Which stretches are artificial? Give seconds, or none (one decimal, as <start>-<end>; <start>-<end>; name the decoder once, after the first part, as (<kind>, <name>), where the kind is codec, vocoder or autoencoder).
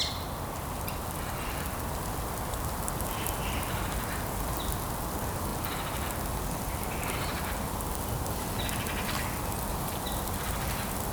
none